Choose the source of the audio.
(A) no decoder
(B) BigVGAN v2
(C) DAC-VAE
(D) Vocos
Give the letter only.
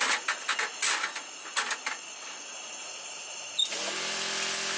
A